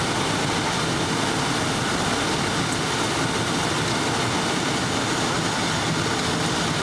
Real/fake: real